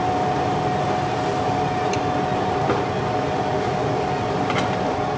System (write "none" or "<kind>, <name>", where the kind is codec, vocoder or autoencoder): none